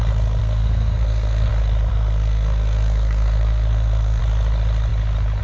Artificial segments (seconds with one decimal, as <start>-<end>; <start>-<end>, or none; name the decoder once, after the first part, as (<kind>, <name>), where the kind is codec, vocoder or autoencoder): 0.4-1.5 (codec, SNAC); 1.9-4.2

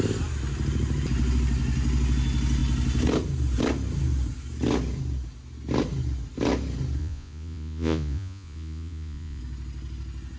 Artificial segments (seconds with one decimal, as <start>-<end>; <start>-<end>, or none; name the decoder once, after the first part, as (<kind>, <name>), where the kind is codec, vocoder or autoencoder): 7.0-9.4 (vocoder, Vocos)

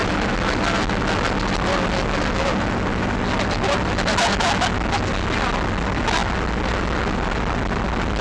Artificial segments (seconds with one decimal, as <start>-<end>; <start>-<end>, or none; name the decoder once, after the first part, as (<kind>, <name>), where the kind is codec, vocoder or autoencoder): none

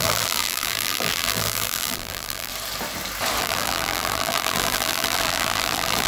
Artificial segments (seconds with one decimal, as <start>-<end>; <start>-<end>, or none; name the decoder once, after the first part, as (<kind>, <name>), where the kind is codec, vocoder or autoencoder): 0.0-2.5 (vocoder, BigVGAN v2); 3.4-6.1